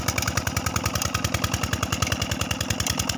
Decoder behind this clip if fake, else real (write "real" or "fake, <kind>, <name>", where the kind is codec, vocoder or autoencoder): real